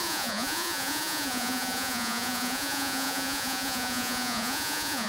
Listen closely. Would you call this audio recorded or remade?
remade